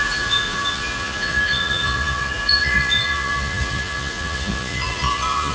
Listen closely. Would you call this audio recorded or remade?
remade